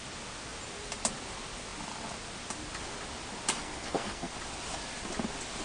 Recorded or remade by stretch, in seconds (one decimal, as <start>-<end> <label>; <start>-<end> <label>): 0.0-3.6 recorded; 3.6-4.3 remade; 4.3-5.6 recorded